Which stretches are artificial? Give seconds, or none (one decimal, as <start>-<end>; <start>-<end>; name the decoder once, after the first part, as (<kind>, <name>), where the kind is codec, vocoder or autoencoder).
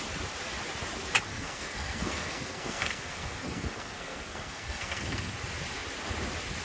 1.3-5.3 (codec, SNAC)